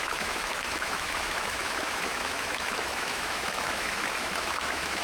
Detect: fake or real fake